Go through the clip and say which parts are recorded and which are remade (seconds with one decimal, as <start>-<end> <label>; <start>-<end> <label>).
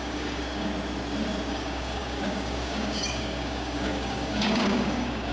0.0-0.7 remade; 0.7-1.5 recorded; 1.5-5.3 remade